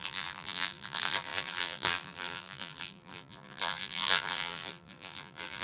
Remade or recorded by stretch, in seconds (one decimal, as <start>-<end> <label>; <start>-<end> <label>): 0.0-5.6 remade